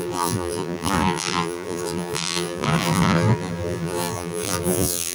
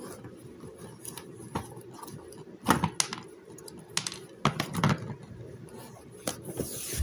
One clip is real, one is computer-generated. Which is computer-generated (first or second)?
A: first